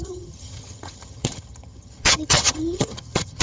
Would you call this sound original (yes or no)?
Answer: no